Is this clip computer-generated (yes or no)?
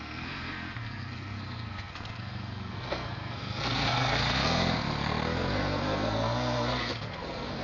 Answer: yes